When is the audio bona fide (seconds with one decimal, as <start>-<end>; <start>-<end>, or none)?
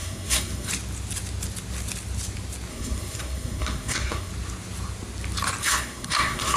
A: 0.7-2.7; 4.3-5.6